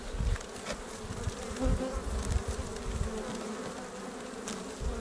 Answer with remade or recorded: recorded